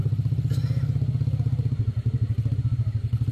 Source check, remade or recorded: recorded